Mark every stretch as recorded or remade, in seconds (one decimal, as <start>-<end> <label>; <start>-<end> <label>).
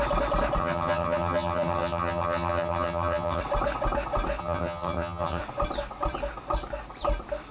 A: 0.0-0.6 recorded; 0.6-3.4 remade; 3.4-4.4 recorded; 4.4-5.4 remade; 5.4-7.5 recorded